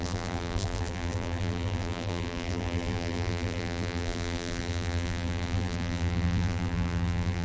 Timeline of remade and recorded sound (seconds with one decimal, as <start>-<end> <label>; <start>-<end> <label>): 0.0-7.4 remade